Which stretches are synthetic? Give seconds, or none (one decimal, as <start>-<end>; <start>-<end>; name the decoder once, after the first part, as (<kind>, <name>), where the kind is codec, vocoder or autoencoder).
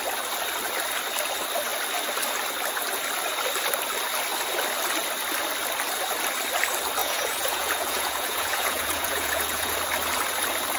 7.0-9.7 (vocoder, Vocos)